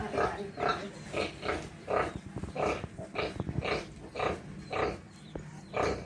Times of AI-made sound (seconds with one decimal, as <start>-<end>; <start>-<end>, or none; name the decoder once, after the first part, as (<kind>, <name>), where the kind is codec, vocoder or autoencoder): none